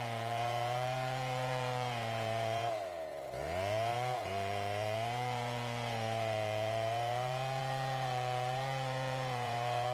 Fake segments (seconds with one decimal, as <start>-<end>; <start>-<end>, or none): 0.0-9.9